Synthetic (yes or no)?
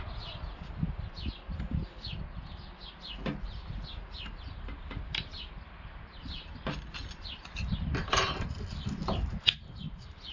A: no